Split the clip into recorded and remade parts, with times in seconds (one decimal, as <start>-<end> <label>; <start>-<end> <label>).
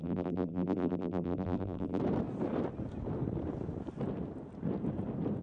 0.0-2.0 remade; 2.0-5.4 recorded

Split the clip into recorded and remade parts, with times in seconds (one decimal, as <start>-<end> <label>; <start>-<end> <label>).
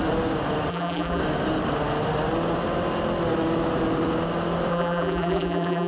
0.0-0.7 recorded; 0.7-1.2 remade; 1.2-4.7 recorded; 4.7-5.9 remade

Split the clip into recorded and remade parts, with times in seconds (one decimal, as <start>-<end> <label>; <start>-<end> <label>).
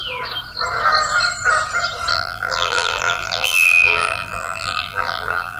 0.0-2.1 recorded; 2.1-5.6 remade